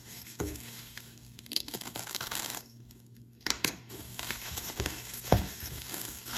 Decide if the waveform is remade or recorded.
remade